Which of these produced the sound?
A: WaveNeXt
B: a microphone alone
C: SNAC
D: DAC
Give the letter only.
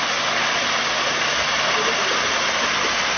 B